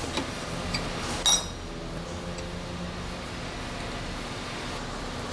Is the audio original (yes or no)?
yes